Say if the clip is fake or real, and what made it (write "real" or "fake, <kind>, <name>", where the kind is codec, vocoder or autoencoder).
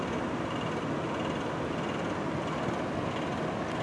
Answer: real